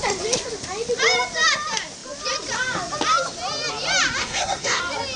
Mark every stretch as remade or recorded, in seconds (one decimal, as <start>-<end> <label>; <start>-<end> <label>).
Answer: 0.0-4.2 recorded; 4.2-4.8 remade; 4.8-5.2 recorded